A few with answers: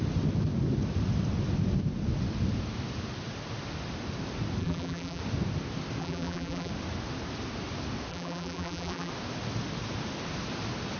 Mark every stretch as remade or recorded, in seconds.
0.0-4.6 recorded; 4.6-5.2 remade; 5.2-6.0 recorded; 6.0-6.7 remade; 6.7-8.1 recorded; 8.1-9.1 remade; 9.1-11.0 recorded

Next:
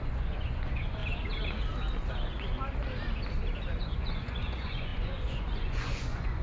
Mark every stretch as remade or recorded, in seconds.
0.0-1.0 remade; 1.0-3.8 recorded; 3.8-6.4 remade